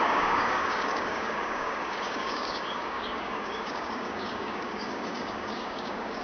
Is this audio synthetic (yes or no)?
yes